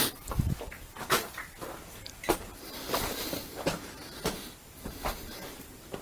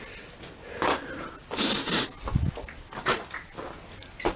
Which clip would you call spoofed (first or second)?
first